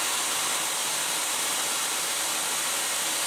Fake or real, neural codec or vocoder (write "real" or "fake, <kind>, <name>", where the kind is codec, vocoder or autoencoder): real